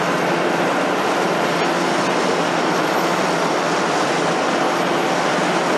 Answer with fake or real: real